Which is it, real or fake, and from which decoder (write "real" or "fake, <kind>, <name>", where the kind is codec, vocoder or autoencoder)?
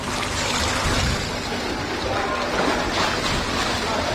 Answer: real